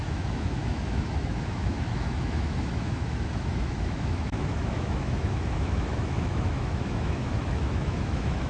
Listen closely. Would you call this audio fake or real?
fake